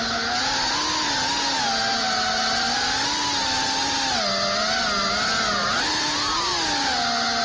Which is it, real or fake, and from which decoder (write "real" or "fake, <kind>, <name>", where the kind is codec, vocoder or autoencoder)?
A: real